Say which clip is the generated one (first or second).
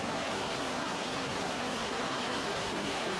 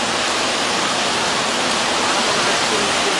first